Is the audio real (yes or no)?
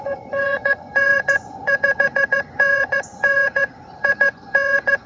no